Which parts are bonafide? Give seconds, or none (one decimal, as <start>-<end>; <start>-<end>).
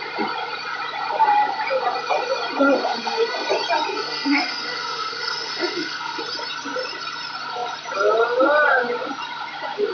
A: 0.0-2.8; 3.5-3.9; 6.2-9.9